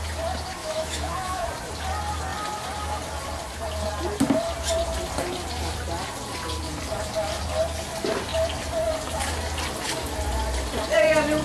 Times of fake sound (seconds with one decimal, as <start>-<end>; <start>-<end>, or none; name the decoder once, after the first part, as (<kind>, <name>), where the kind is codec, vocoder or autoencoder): 0.6-1.5 (autoencoder, DAC-VAE)